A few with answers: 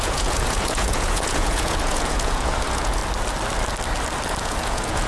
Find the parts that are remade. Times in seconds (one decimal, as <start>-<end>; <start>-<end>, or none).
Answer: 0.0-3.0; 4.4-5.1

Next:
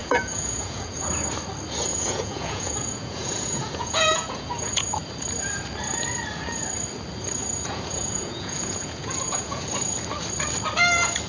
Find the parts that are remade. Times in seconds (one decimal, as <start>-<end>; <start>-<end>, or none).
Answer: 0.0-1.1; 1.9-4.9; 7.4-9.6

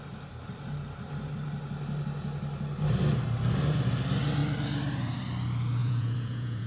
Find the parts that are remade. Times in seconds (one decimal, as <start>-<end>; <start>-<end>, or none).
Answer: 5.8-6.7